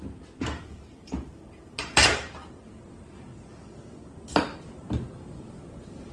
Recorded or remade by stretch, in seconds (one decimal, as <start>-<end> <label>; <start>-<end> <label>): 0.0-3.3 remade; 3.3-4.1 recorded; 4.1-6.1 remade